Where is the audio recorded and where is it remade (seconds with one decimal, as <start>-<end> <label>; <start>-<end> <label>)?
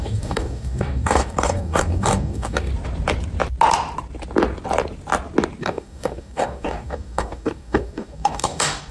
0.0-2.7 remade; 2.7-5.6 recorded; 5.6-8.9 remade